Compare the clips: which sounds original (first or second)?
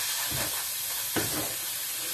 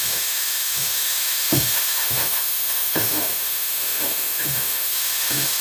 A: first